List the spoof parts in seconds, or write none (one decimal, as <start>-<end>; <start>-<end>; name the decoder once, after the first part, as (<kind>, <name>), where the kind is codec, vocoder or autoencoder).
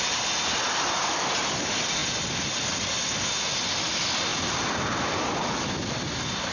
none